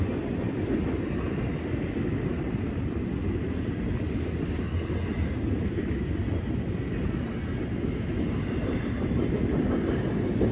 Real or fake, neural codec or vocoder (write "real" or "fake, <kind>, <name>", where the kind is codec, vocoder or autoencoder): real